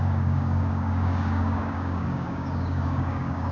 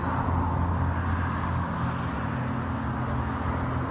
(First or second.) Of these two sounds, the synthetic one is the first